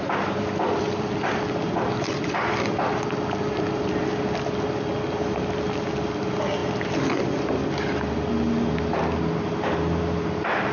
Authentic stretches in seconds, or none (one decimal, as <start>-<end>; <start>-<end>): 0.0-10.7